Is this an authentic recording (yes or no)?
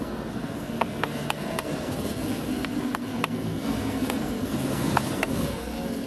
no